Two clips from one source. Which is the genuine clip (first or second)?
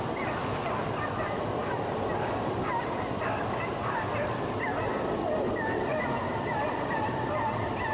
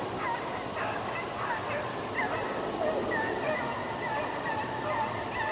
second